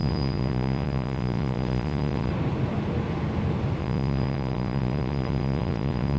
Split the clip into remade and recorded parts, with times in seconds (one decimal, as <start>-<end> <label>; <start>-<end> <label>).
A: 0.0-2.3 remade; 2.3-3.8 recorded; 3.8-6.2 remade